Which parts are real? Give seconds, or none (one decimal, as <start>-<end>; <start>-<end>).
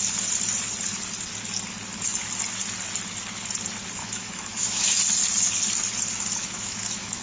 0.0-4.0; 5.0-6.4